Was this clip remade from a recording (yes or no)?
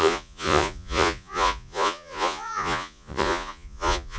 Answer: yes